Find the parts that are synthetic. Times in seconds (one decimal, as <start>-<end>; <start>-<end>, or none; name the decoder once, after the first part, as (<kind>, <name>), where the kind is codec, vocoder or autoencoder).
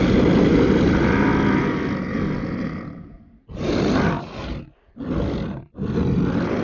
none